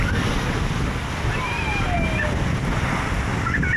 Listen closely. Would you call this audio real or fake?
real